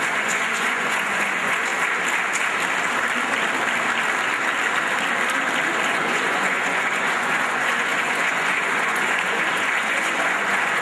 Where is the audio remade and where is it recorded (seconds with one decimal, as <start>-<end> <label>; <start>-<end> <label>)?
0.0-1.7 remade; 1.7-5.9 recorded; 5.9-10.8 remade